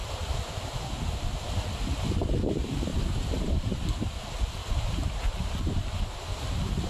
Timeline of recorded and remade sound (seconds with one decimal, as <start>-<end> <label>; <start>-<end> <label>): 0.0-2.9 recorded; 2.9-3.7 remade; 3.7-4.6 recorded; 4.6-6.5 remade; 6.5-6.9 recorded